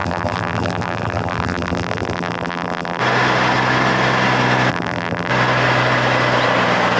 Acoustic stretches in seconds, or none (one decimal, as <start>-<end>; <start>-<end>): 3.0-4.7; 5.3-7.0

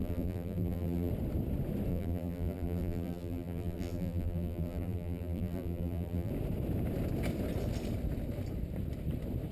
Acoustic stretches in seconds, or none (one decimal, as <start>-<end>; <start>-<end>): 1.1-1.9; 6.3-9.5

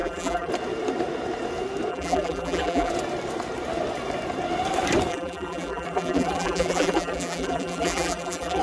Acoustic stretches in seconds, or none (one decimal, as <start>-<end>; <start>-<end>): 0.5-1.9; 2.9-5.1

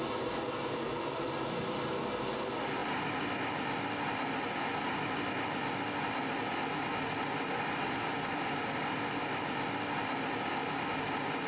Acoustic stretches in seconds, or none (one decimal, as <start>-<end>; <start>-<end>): 0.0-10.6; 11.1-11.5